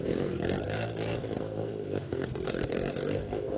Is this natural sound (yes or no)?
no